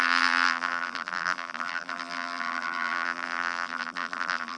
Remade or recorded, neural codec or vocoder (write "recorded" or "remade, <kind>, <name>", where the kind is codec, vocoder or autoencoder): remade, vocoder, BigVGAN v2